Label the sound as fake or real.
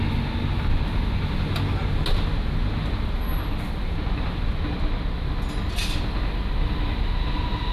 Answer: real